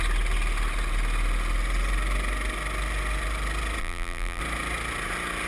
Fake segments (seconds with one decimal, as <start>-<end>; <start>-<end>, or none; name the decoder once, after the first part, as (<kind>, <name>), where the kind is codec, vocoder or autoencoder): 3.8-4.4 (vocoder, BigVGAN v2)